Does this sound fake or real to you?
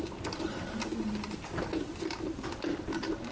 real